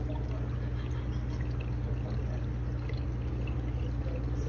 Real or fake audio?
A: real